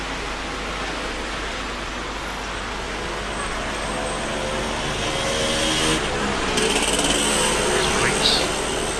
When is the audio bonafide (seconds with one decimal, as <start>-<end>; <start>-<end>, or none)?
0.0-9.0